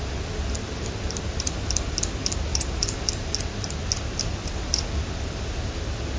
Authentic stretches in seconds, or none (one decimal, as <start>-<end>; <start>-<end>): 0.0-2.5; 3.1-6.2